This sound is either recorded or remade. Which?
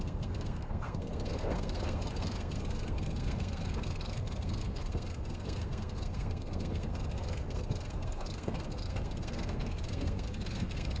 remade